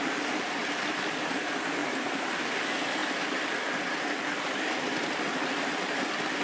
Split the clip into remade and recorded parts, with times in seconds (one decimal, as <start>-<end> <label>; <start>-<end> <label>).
0.0-0.6 recorded; 0.6-1.4 remade; 1.4-1.8 recorded; 1.8-2.4 remade; 2.4-6.4 recorded